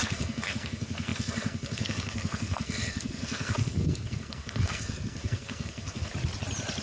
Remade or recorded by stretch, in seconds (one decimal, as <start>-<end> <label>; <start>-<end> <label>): 0.0-6.1 remade; 6.1-6.8 recorded